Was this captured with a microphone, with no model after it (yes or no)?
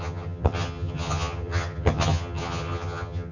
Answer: no